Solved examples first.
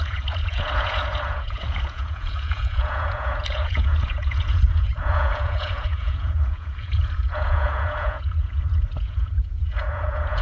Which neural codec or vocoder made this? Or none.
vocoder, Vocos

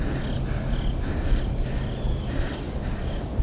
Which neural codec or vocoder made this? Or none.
none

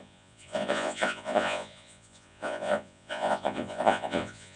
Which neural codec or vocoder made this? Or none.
vocoder, Vocos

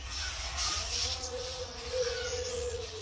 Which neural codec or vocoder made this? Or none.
vocoder, Vocos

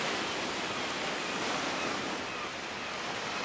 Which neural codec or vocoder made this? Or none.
none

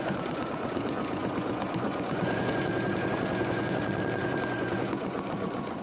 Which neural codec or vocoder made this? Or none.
vocoder, Vocos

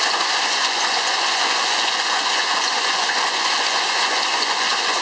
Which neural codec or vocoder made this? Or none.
vocoder, Vocos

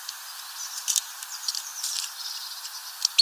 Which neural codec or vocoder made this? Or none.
none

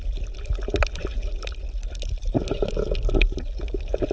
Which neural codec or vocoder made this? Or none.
none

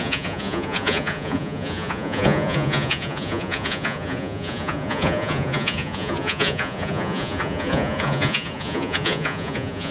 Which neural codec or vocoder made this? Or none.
vocoder, Vocos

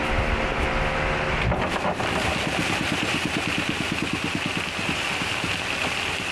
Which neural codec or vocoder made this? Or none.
none